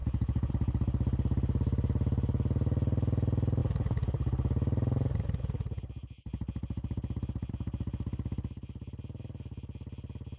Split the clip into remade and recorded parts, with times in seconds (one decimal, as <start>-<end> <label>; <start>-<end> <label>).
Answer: 0.0-0.5 remade; 0.5-10.4 recorded